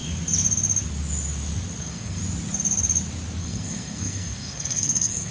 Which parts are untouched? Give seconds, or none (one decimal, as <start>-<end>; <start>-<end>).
0.0-1.8; 2.2-3.4